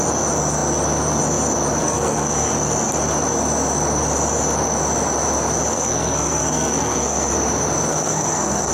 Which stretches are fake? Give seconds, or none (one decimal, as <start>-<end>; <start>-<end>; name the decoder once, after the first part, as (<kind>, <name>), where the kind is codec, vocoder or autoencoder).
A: 1.8-2.5 (codec, SNAC); 5.7-7.3; 7.9-8.7